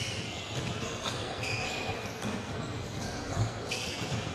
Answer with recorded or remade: remade